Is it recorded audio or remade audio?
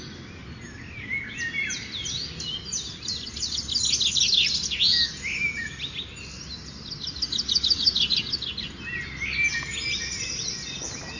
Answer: recorded